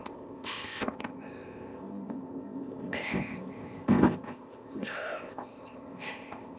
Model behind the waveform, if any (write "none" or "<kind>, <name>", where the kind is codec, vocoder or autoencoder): codec, ZipCodec